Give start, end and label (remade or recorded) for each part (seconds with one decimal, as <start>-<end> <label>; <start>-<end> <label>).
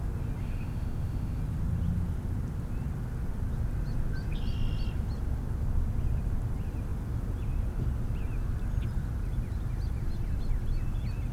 0.0-0.4 recorded; 0.4-1.4 remade; 1.4-11.3 recorded